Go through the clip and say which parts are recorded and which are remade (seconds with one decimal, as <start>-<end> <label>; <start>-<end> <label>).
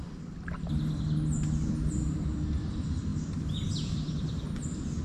0.0-5.0 recorded